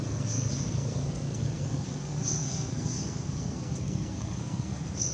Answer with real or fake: fake